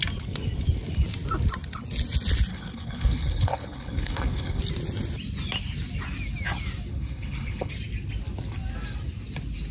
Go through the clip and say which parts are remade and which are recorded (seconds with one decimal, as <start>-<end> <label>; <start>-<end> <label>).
0.0-2.5 recorded; 2.5-4.6 remade; 4.6-6.9 recorded; 6.9-7.7 remade; 7.7-9.7 recorded